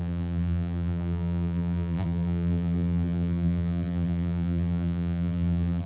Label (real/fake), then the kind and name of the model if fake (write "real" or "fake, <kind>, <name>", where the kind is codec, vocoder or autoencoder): fake, vocoder, BigVGAN v2